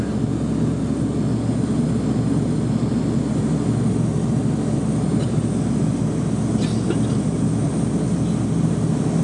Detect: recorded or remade recorded